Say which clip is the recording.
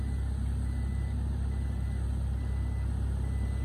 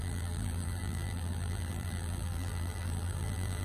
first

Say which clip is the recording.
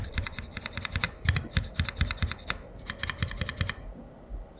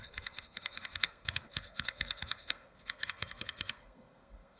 first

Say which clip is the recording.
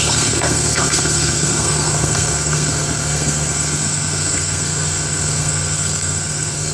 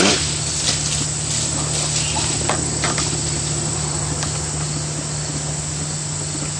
second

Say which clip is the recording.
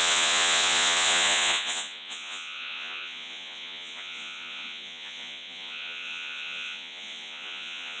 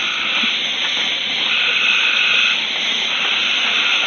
second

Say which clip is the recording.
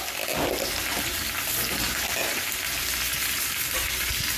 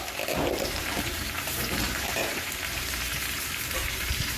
first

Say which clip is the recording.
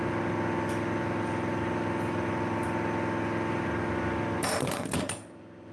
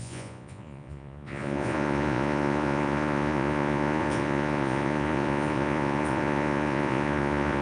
first